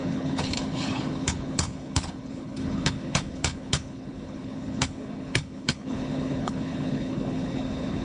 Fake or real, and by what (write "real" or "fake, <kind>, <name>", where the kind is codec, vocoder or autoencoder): fake, codec, HILCodec